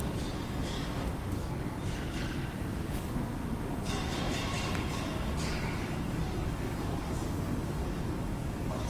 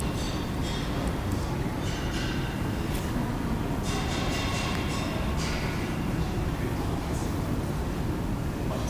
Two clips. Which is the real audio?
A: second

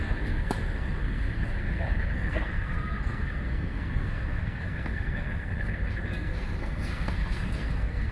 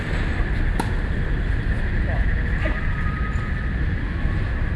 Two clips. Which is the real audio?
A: second